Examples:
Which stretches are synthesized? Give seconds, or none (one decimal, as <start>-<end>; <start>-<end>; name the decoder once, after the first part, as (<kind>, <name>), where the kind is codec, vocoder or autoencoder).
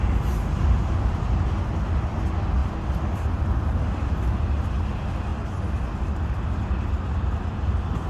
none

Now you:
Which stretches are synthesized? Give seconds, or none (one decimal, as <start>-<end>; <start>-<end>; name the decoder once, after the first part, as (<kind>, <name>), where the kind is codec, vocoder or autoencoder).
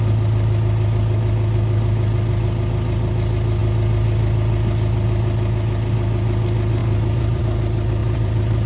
6.8-7.4 (vocoder, BigVGAN v2); 8.0-8.7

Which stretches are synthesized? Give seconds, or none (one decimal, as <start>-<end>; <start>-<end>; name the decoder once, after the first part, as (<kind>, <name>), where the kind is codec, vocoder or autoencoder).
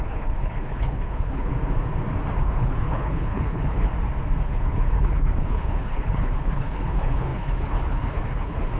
0.0-1.5 (codec, HILCodec); 2.4-3.9; 4.4-8.8